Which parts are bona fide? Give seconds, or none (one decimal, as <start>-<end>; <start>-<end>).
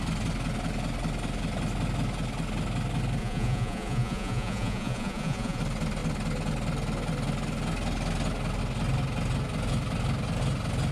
0.0-3.2; 5.6-10.9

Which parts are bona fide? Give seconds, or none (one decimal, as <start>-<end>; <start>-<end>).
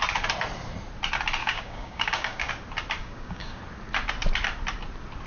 0.0-1.4; 2.5-3.0; 3.6-5.3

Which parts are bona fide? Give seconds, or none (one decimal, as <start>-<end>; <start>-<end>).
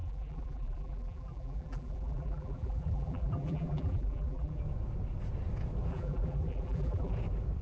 4.6-5.9; 7.1-7.6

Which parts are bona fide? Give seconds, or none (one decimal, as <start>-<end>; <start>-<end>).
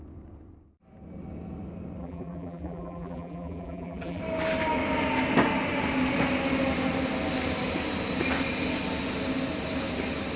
0.0-2.0; 4.2-10.4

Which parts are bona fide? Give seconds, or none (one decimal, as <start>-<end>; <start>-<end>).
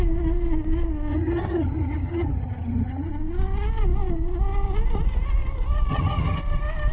0.0-1.1; 3.1-5.9; 6.4-6.9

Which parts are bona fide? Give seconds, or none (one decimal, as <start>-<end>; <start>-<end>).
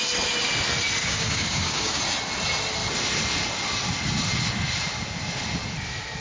0.0-1.0; 2.0-6.2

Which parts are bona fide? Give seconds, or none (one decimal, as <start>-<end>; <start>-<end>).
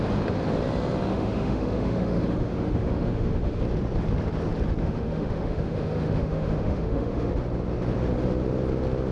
0.0-1.1; 3.6-4.8; 7.3-9.1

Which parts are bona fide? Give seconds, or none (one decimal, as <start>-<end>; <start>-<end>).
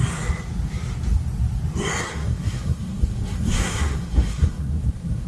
0.0-2.0